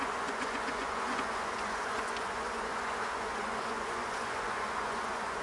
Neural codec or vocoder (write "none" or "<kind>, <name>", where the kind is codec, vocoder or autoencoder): vocoder, Vocos